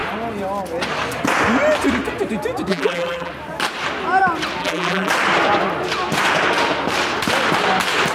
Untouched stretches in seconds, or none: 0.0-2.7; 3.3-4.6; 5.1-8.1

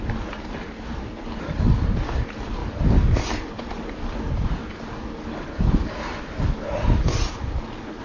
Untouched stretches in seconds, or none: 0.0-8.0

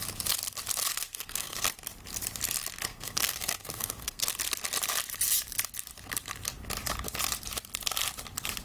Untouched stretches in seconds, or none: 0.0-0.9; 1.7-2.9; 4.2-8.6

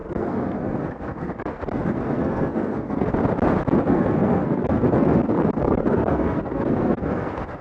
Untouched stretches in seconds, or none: 3.2-3.8

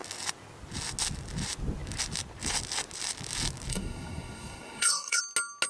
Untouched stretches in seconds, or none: 0.0-3.7; 5.2-5.7